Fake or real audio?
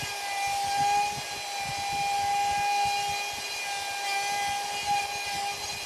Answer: real